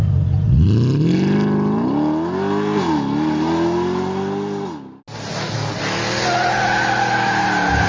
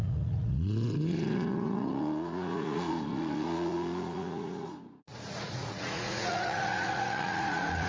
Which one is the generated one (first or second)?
second